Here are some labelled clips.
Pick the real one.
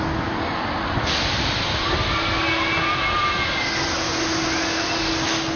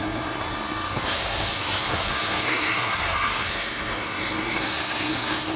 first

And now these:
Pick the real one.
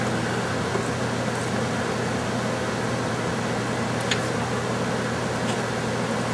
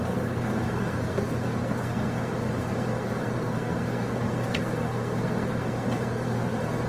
first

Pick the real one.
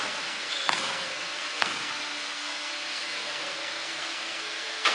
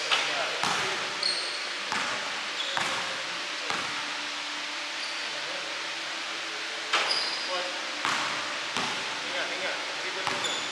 second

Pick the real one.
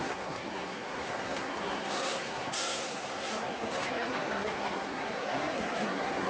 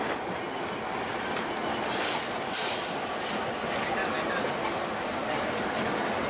second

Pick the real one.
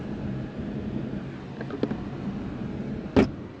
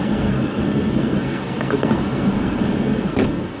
first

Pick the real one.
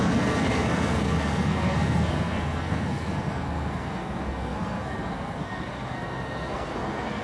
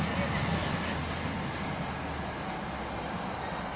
second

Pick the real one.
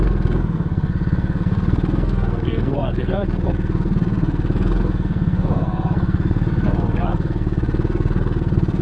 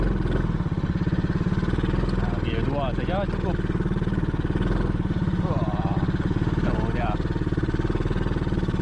second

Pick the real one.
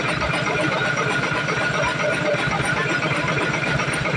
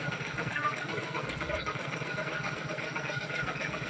first